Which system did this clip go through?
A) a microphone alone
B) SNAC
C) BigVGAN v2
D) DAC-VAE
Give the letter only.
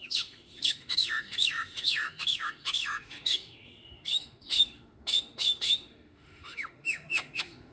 D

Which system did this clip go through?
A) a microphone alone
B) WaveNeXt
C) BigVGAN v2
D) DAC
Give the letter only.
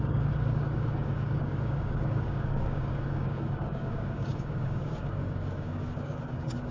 D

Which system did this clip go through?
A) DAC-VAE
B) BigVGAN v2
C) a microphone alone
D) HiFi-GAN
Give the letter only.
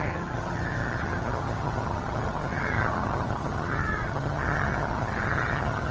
D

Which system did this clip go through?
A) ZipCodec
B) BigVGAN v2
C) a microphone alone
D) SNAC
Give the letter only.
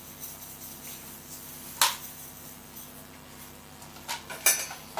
C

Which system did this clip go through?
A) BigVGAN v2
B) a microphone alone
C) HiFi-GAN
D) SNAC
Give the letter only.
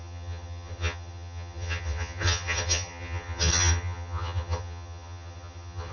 C